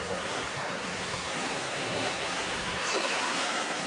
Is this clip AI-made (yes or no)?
yes